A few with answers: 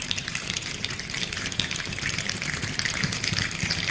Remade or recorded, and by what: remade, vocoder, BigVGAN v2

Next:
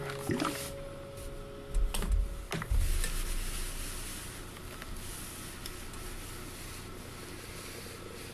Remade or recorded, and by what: recorded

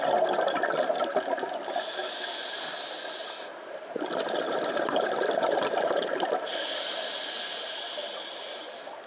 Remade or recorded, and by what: recorded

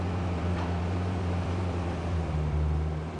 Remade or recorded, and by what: remade, vocoder, BigVGAN v2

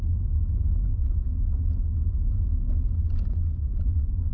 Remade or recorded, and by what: recorded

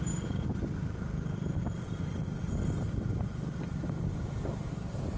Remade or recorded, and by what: remade, vocoder, BigVGAN v2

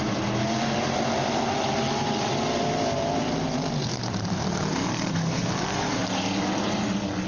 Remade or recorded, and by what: remade, vocoder, BigVGAN v2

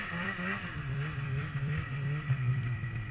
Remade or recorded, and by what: remade, vocoder, BigVGAN v2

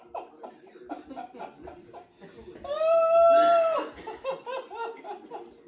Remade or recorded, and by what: recorded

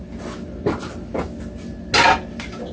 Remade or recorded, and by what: recorded